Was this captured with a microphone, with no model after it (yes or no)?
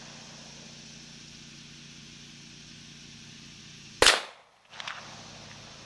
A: yes